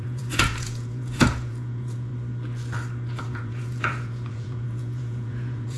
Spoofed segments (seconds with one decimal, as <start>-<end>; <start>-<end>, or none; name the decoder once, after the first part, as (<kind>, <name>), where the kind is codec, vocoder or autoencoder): 0.0-2.1 (vocoder, Vocos); 3.2-5.8